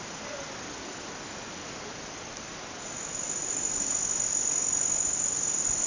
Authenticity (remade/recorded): recorded